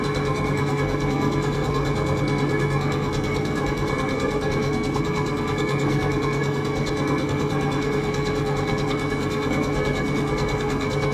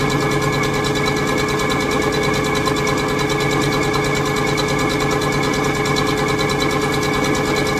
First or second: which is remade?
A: first